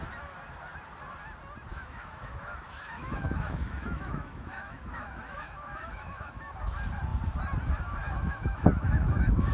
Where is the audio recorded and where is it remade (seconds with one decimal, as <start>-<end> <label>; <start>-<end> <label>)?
0.0-1.7 recorded; 1.7-6.3 remade; 6.3-8.0 recorded; 8.0-9.5 remade